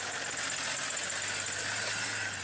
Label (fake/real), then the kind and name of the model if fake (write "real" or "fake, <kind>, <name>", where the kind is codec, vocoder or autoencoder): real